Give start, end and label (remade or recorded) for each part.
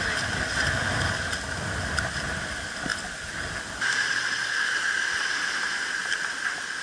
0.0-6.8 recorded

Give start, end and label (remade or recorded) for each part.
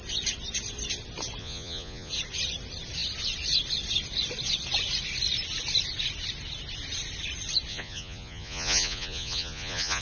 0.0-1.4 recorded; 1.4-2.1 remade; 2.1-7.7 recorded; 7.7-10.0 remade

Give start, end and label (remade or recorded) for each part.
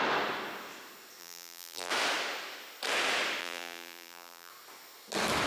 0.0-1.2 recorded; 1.2-1.9 remade; 1.9-3.4 recorded; 3.4-4.5 remade; 4.5-5.5 recorded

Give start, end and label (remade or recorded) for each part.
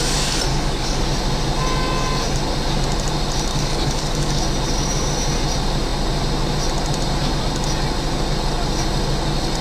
0.0-0.5 recorded; 0.5-1.0 remade; 1.0-3.5 recorded; 3.5-4.4 remade; 4.4-9.6 recorded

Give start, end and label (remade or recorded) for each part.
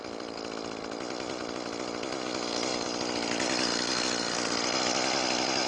0.0-5.7 recorded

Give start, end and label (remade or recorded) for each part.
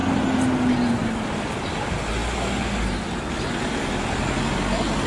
0.0-5.1 recorded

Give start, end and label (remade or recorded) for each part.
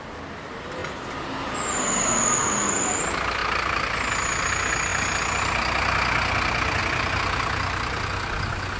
0.0-8.8 recorded